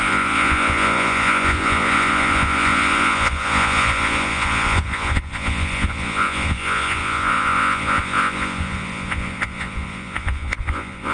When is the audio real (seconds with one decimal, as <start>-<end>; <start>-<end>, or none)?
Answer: none